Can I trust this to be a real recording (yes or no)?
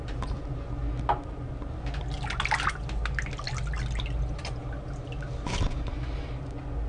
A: yes